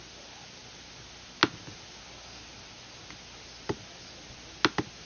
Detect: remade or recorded recorded